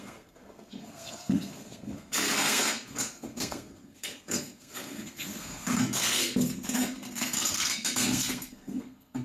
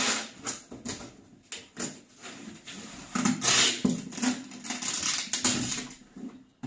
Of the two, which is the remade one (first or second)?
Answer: first